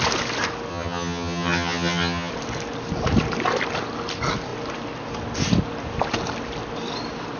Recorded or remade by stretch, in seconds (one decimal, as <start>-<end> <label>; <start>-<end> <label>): 0.0-0.7 recorded; 0.7-2.3 remade; 2.3-7.4 recorded